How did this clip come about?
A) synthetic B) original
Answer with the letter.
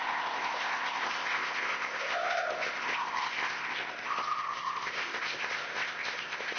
A